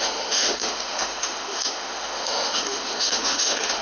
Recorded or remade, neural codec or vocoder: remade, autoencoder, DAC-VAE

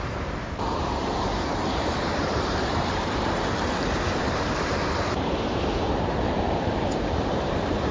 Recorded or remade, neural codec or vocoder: remade, vocoder, BigVGAN v2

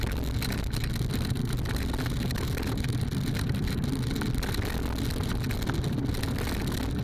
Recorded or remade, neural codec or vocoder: recorded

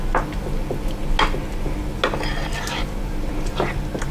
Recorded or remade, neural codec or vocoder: recorded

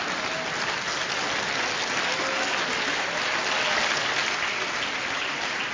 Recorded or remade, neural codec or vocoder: recorded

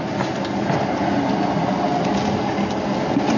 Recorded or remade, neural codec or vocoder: recorded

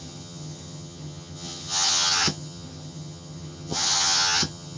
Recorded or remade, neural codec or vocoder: remade, vocoder, HiFi-GAN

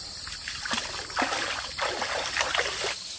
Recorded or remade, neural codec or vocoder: recorded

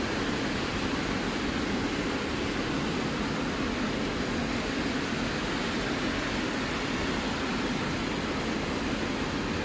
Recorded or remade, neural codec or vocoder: recorded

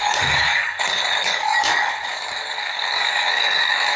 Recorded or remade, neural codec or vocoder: remade, codec, DAC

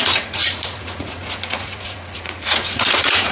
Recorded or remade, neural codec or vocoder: remade, vocoder, Vocos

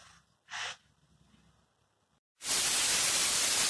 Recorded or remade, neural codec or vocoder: recorded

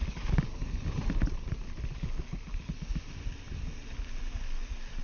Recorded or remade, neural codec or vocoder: recorded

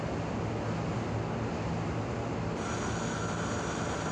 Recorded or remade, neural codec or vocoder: recorded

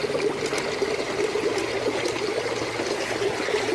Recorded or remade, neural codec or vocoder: recorded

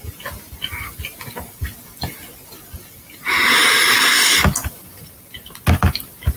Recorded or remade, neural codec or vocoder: recorded